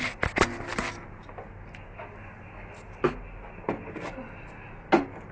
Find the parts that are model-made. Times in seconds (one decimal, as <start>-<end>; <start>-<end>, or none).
none